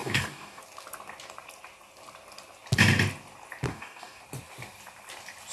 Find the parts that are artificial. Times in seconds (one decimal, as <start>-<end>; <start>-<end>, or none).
0.0-0.6; 3.7-4.2